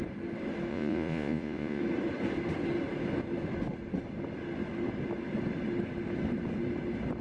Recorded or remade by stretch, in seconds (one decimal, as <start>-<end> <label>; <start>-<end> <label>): 0.0-0.7 recorded; 0.7-1.8 remade; 1.8-7.2 recorded